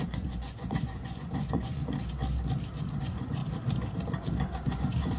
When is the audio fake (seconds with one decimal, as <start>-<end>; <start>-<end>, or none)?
0.0-1.8; 3.0-3.4; 4.7-5.2